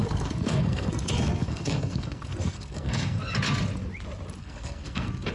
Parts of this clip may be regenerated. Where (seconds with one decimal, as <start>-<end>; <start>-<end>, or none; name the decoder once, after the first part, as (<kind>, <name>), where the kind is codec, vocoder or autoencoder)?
0.0-3.2 (codec, SNAC); 4.4-5.3